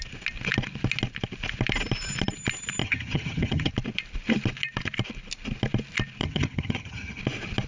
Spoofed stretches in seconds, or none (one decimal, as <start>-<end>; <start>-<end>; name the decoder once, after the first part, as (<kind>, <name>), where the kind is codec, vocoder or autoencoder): 2.8-3.7 (vocoder, HiFi-GAN); 6.2-7.2

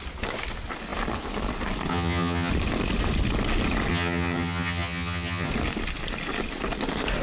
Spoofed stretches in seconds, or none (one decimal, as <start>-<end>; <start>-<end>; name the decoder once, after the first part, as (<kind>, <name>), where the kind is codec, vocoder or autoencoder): 1.9-2.5 (vocoder, HiFi-GAN); 3.9-5.5

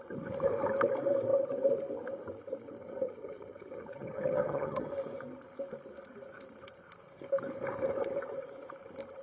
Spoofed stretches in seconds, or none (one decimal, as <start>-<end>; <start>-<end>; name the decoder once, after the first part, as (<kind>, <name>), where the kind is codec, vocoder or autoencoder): 2.8-4.9 (vocoder, HiFi-GAN)

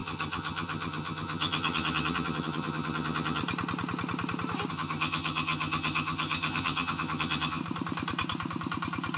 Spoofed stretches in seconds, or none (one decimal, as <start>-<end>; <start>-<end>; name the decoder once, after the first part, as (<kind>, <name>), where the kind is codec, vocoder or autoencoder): 0.0-3.4 (vocoder, HiFi-GAN); 4.7-7.6